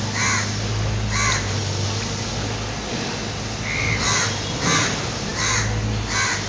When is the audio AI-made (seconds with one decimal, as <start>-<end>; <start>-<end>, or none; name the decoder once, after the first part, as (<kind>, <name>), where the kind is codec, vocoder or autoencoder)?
none